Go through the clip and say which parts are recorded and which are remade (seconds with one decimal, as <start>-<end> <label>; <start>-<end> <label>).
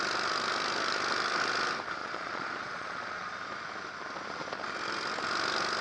0.0-2.0 recorded; 2.0-3.3 remade; 3.3-5.8 recorded